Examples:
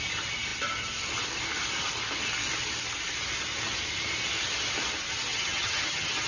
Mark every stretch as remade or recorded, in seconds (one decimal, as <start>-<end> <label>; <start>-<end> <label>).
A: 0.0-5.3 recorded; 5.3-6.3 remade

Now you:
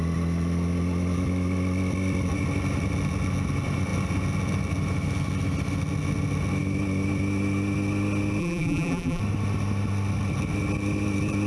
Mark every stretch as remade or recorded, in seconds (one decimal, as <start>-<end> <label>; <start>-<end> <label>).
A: 0.0-8.4 recorded; 8.4-9.2 remade; 9.2-11.5 recorded

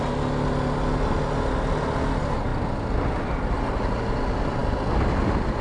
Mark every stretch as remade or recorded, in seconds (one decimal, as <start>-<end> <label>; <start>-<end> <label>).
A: 0.0-5.6 recorded

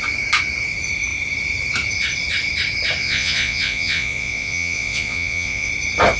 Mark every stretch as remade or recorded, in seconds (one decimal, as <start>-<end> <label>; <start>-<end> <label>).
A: 0.0-3.0 recorded; 3.0-5.7 remade; 5.7-6.2 recorded

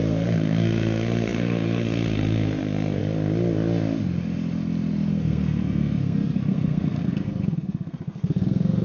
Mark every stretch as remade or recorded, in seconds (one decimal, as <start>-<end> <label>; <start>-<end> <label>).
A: 0.0-3.0 remade; 3.0-5.1 recorded; 5.1-8.8 remade

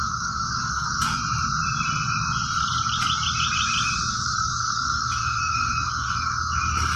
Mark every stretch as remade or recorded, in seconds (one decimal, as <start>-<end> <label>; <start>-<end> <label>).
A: 0.0-1.2 remade; 1.2-4.1 recorded; 4.1-7.0 remade